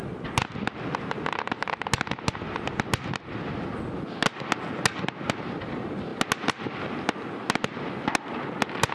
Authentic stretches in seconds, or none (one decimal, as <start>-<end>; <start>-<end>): 0.0-8.9